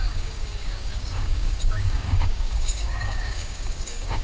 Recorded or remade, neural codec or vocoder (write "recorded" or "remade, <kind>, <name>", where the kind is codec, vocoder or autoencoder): remade, codec, DAC